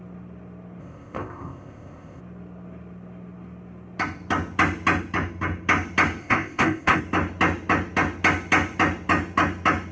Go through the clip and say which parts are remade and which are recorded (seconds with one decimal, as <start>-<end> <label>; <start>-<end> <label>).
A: 0.0-0.8 recorded; 0.8-2.2 remade; 2.2-6.2 recorded; 6.2-7.0 remade; 7.0-9.9 recorded